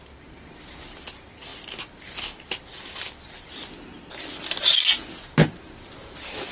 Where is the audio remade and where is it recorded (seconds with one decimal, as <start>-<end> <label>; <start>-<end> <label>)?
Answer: 0.0-6.5 recorded